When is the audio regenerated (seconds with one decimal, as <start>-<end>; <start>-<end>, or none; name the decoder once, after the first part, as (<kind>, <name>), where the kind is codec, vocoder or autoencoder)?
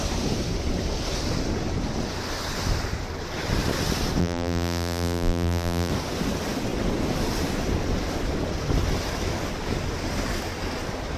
4.2-5.9 (vocoder, BigVGAN v2)